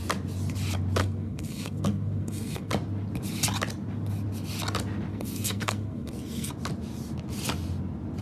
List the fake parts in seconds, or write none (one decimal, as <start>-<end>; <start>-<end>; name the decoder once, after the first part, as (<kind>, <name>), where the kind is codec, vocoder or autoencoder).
1.0-2.7 (codec, SNAC); 5.1-6.5